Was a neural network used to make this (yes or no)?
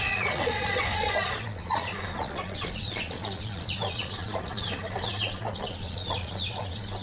yes